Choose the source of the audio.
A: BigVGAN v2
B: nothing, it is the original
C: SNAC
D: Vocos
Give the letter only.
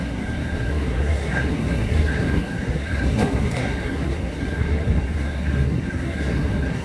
C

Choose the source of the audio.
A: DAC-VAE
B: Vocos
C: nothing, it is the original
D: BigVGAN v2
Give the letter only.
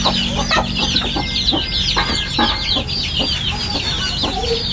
C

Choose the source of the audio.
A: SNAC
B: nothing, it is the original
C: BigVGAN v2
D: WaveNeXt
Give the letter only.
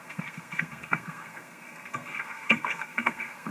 A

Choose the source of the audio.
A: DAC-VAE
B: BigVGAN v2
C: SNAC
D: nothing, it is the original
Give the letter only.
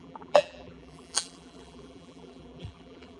B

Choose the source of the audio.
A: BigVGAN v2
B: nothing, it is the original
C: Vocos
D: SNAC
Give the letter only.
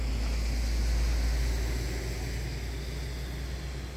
B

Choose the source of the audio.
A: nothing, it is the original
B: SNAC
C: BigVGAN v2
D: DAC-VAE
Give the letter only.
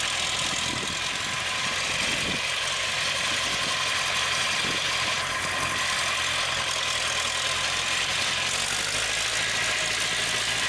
A